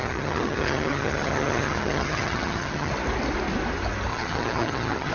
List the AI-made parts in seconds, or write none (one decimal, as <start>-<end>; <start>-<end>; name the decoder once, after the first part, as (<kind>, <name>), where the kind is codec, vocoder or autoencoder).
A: 0.0-2.9 (vocoder, HiFi-GAN); 4.1-5.1